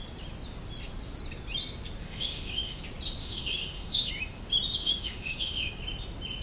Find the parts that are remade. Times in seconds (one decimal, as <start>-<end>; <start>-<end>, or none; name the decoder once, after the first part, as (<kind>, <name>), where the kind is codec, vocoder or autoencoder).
2.0-2.8 (autoencoder, DAC-VAE); 3.2-4.1; 4.8-5.7